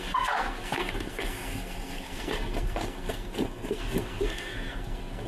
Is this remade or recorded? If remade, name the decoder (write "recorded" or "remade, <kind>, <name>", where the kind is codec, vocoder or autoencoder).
remade, codec, SNAC